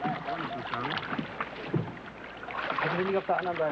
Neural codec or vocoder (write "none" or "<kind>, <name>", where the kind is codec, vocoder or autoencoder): none